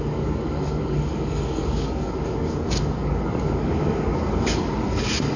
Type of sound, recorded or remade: remade